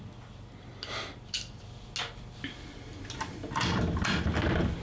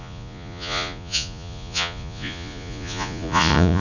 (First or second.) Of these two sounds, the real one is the first